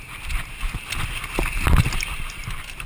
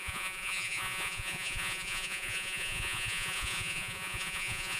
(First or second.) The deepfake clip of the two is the second